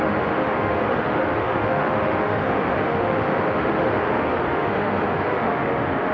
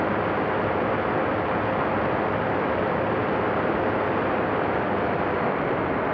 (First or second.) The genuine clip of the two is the second